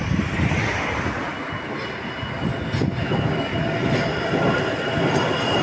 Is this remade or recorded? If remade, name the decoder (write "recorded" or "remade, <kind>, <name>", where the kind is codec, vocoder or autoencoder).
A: recorded